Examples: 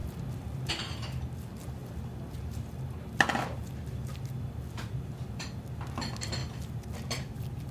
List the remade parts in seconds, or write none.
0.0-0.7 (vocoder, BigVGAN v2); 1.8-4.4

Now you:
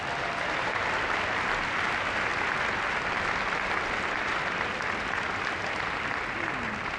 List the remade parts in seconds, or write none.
none

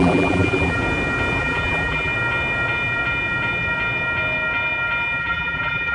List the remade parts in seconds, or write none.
0.0-0.8 (vocoder, BigVGAN v2); 1.4-2.1; 5.2-5.9